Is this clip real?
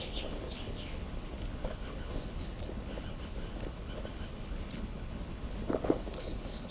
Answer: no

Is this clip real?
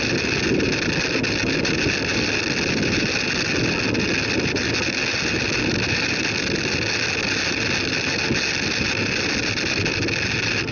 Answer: yes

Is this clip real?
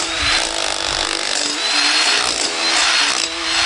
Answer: yes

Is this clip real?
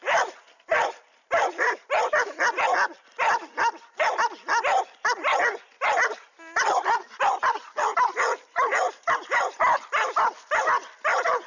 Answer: yes